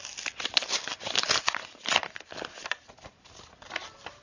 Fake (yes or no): no